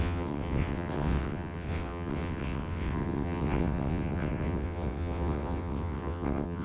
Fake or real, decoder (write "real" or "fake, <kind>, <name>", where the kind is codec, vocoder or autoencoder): fake, vocoder, WaveNeXt